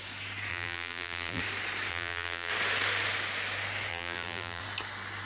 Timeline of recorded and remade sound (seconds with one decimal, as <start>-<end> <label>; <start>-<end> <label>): 0.0-0.5 recorded; 0.5-1.4 remade; 1.4-1.9 recorded; 1.9-2.5 remade; 2.5-3.9 recorded; 3.9-4.6 remade; 4.6-5.3 recorded